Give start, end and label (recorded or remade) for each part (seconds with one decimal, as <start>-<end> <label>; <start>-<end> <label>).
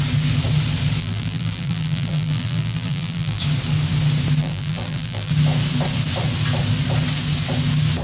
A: 0.0-1.0 recorded; 1.0-3.4 remade; 3.4-4.4 recorded; 4.4-5.3 remade; 5.3-8.0 recorded